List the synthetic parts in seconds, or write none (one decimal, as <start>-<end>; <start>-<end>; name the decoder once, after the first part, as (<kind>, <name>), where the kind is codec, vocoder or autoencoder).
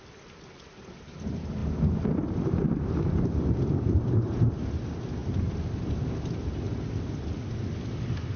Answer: none